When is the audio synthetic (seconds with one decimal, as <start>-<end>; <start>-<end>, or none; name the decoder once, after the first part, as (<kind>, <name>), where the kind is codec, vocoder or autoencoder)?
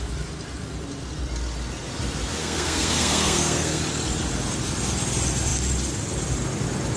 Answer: 2.4-3.8 (codec, SNAC)